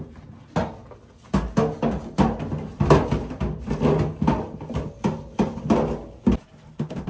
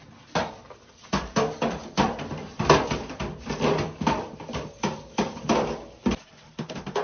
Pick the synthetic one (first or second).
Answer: second